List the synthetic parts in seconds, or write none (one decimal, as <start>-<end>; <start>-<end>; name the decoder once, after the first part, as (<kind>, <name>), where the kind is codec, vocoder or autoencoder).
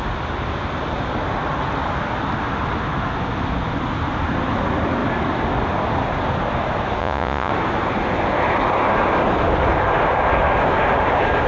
7.0-7.5 (vocoder, Vocos)